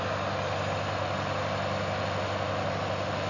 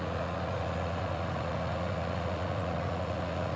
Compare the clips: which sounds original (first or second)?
first